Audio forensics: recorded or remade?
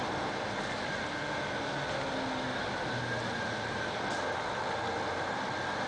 recorded